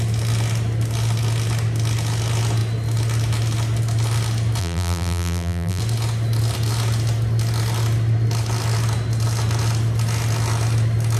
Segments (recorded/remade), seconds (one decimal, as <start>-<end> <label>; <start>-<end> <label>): 0.0-4.6 recorded; 4.6-5.8 remade; 5.8-11.2 recorded